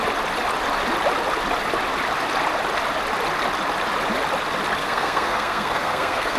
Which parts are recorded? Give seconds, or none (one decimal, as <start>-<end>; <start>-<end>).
0.0-4.8